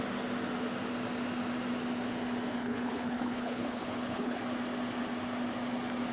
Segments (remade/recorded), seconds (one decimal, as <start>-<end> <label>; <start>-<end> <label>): 0.0-2.6 recorded; 2.6-4.4 remade; 4.4-6.1 recorded